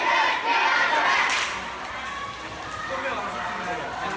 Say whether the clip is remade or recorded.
recorded